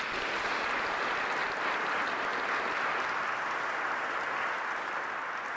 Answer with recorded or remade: recorded